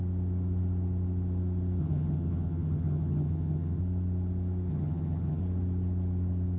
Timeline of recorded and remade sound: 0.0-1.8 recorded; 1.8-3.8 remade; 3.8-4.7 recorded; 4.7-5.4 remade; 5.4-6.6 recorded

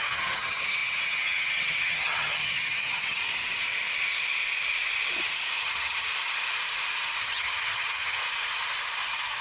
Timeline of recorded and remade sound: 0.0-3.2 remade; 3.2-5.6 recorded; 5.6-6.1 remade; 6.1-7.2 recorded; 7.2-8.2 remade; 8.2-9.4 recorded

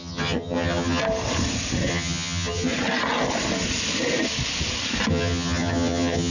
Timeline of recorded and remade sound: 0.0-1.0 remade; 1.0-1.9 recorded; 1.9-2.7 remade; 2.7-5.1 recorded; 5.1-6.3 remade